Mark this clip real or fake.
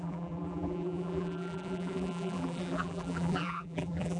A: fake